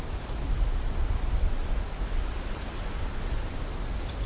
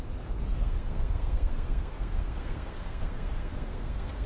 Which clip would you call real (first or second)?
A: first